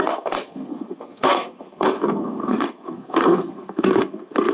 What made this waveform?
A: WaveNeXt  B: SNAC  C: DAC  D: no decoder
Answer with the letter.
B